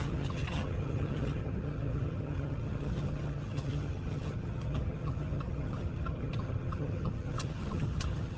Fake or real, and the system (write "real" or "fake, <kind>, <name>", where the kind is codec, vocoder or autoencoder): fake, vocoder, HiFi-GAN